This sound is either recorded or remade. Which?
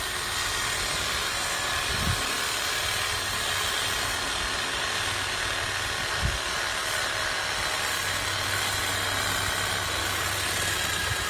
recorded